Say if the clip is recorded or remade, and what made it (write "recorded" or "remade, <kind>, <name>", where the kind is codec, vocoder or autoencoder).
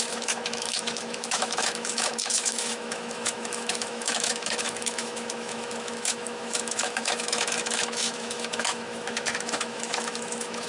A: remade, autoencoder, DAC-VAE